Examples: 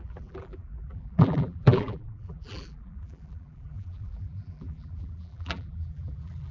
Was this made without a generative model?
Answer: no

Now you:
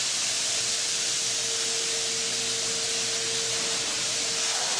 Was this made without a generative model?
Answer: yes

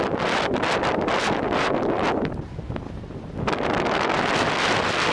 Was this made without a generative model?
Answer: yes